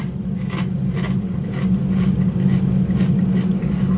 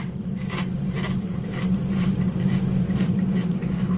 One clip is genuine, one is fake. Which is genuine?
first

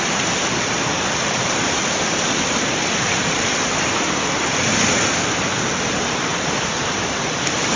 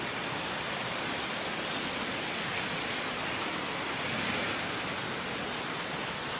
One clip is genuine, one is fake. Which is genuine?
second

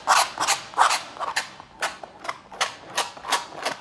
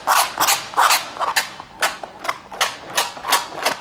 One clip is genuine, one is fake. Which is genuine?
second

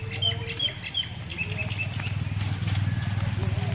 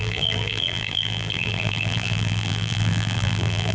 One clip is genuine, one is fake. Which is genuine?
first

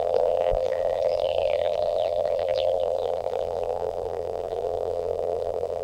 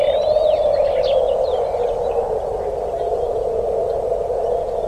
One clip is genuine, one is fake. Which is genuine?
second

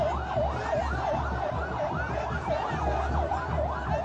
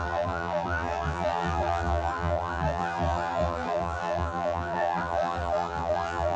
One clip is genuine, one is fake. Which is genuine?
first